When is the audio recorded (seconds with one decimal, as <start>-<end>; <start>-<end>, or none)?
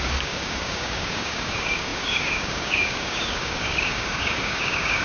none